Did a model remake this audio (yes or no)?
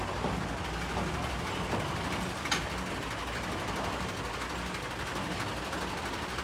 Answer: no